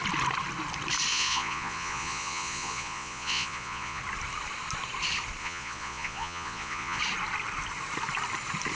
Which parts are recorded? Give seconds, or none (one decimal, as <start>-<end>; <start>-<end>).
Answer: 0.0-1.1; 4.0-5.4; 7.0-8.7